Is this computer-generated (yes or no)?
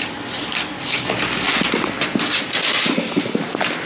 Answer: no